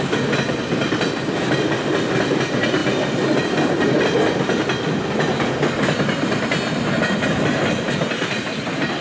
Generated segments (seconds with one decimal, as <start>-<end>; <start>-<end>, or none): none